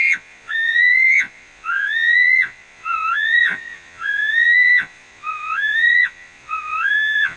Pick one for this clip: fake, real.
fake